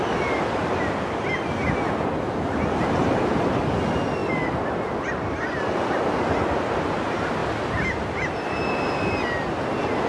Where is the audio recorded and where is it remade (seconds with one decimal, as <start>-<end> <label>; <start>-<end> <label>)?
0.0-3.0 recorded; 3.0-3.6 remade; 3.6-10.1 recorded